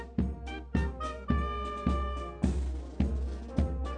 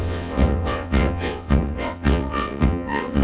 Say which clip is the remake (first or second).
second